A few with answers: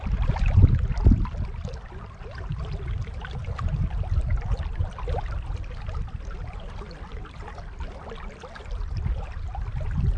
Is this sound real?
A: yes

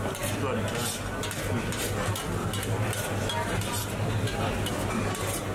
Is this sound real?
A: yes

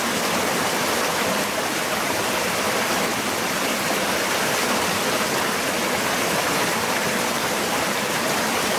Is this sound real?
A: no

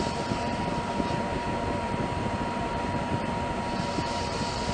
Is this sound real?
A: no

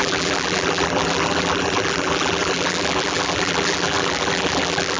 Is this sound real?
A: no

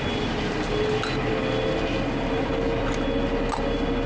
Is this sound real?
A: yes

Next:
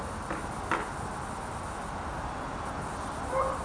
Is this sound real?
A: yes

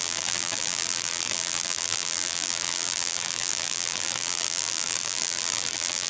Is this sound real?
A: no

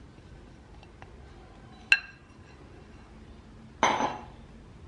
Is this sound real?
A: yes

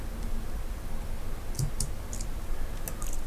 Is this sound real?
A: yes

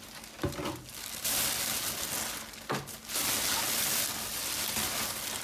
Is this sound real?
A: yes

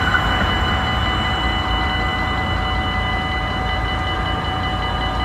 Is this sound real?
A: yes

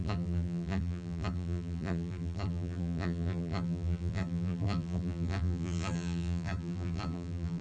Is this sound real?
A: no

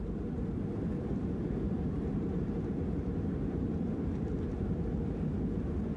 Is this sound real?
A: no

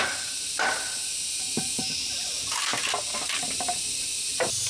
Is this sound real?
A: yes